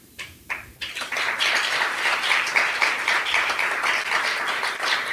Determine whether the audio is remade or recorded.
remade